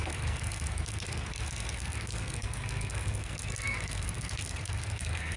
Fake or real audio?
fake